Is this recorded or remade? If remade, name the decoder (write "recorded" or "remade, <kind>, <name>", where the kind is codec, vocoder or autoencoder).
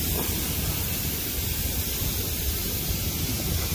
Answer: recorded